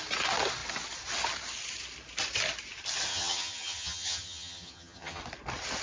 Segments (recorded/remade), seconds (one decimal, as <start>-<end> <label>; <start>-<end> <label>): 0.0-3.1 recorded; 3.1-5.2 remade; 5.2-5.8 recorded